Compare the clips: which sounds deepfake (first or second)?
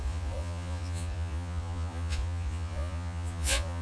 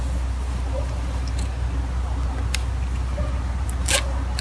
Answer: first